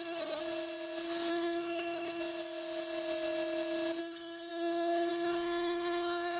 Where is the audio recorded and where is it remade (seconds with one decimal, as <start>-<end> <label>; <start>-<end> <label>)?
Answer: 0.0-0.4 remade; 0.4-1.3 recorded; 1.3-2.2 remade; 2.2-4.0 recorded; 4.0-6.4 remade